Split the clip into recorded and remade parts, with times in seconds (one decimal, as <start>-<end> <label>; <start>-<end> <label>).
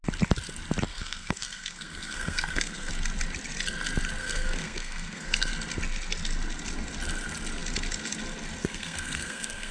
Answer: 0.0-0.9 recorded; 0.9-2.9 remade; 2.9-4.2 recorded; 4.2-5.5 remade; 5.5-8.6 recorded; 8.6-9.7 remade